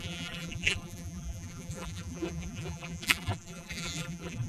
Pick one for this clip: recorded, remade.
remade